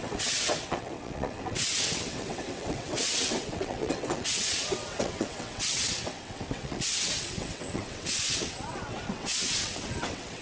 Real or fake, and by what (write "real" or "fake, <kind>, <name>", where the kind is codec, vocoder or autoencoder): fake, vocoder, WaveNeXt